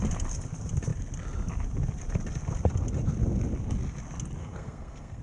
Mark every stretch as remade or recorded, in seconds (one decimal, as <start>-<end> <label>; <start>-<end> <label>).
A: 0.0-4.4 recorded; 4.4-5.2 remade